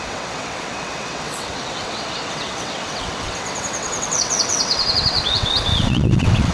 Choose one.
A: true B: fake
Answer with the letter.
B